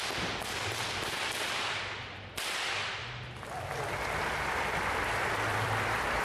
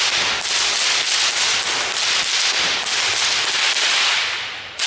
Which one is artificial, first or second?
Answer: first